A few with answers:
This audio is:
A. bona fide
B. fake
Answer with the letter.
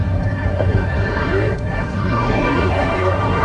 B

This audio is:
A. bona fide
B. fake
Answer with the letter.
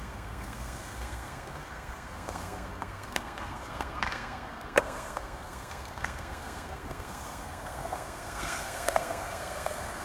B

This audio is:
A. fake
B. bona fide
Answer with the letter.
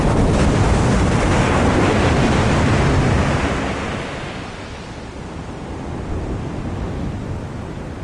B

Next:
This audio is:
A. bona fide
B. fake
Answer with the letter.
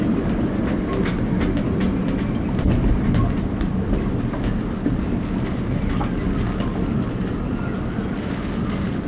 A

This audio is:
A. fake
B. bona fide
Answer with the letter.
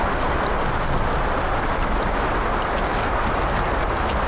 B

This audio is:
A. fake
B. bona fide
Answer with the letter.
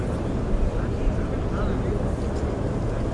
B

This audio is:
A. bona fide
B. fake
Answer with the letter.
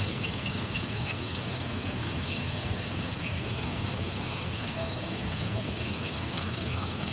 B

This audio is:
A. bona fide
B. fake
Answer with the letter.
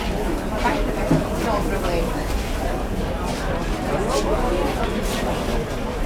A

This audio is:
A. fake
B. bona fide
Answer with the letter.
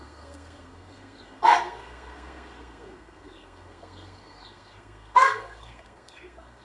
A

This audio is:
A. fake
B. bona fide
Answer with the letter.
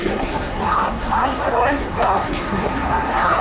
A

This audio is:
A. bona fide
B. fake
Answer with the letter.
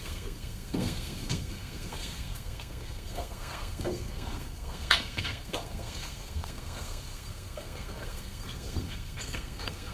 B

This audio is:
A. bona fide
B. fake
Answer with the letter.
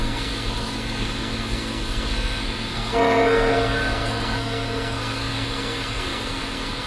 B